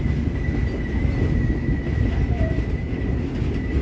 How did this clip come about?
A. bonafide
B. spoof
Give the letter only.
A